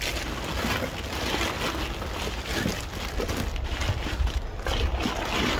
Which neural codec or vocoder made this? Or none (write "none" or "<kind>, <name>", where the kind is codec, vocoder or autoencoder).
none